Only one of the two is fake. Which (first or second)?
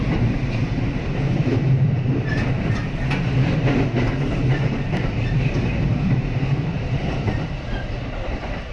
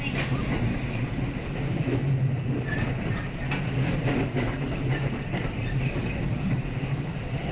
first